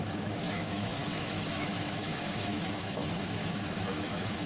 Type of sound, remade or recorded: remade